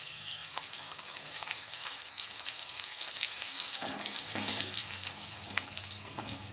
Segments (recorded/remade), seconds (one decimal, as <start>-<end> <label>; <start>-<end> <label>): 0.0-6.5 remade